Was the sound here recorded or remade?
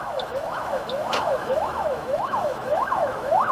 remade